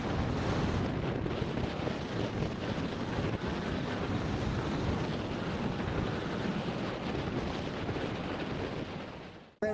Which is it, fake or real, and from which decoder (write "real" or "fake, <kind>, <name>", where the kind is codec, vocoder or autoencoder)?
real